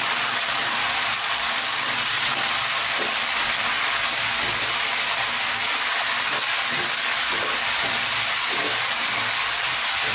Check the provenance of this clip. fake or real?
fake